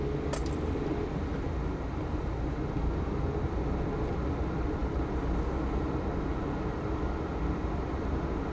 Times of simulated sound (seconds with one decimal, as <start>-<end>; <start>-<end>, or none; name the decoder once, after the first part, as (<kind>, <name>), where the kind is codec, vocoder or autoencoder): none

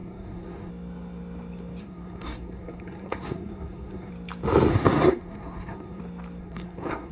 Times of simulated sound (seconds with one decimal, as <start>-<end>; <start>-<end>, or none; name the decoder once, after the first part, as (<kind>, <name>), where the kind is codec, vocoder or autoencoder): 0.0-0.7 (codec, SNAC); 1.8-4.1; 4.7-6.0; 6.4-7.1

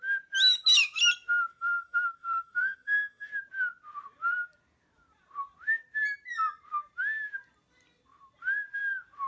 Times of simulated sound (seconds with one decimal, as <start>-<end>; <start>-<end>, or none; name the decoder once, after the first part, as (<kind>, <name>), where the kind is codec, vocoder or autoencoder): 1.5-3.3 (codec, SNAC)